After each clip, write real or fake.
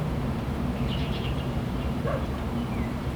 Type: fake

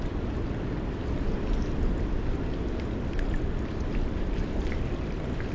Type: real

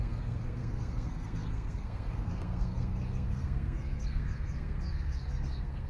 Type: fake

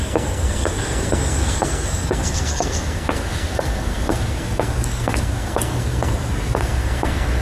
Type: fake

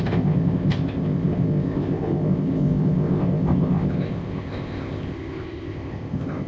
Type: fake